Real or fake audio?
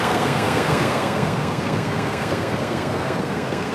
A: fake